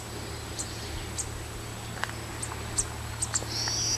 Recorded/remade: recorded